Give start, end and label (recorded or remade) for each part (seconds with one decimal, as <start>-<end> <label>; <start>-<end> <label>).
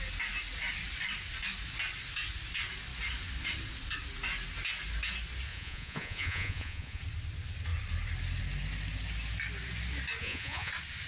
0.0-5.5 recorded; 5.5-7.0 remade; 7.0-10.2 recorded; 10.2-10.7 remade; 10.7-11.1 recorded